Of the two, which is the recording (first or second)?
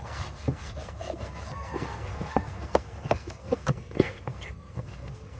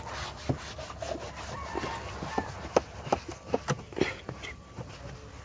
second